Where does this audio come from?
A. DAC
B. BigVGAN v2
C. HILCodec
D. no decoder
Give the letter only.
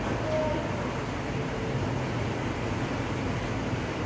D